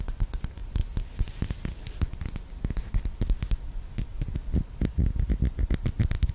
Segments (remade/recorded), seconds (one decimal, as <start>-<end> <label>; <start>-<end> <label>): 0.0-4.1 recorded; 4.1-6.3 remade

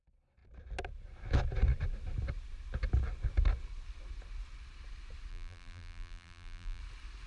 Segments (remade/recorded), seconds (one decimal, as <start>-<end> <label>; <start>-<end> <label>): 0.0-5.3 recorded; 5.3-6.8 remade; 6.8-7.3 recorded